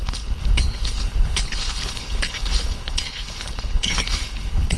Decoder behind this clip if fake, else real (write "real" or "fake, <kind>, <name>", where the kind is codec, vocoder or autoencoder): fake, codec, HILCodec